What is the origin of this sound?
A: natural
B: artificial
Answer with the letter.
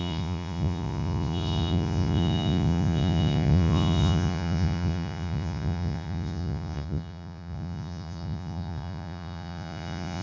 B